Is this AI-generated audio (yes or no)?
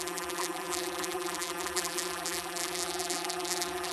yes